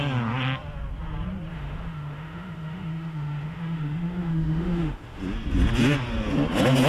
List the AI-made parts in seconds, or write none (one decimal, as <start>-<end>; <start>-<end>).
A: 1.5-5.2